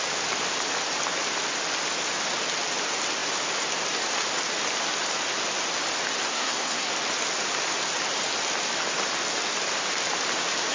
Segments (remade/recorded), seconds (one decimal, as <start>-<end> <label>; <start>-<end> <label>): 0.0-6.3 recorded; 6.3-6.9 remade; 6.9-10.7 recorded